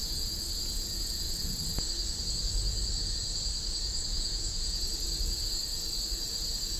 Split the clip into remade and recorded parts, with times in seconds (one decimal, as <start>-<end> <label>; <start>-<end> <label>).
0.0-4.1 recorded; 4.1-4.8 remade; 4.8-6.8 recorded